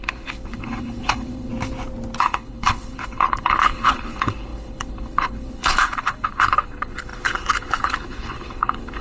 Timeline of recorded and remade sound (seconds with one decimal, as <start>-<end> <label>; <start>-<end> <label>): 0.0-1.5 remade; 1.5-2.2 recorded; 2.2-9.0 remade

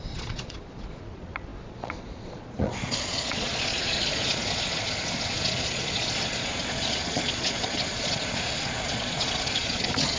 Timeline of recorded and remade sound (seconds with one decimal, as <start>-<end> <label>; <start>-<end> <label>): 0.0-10.2 remade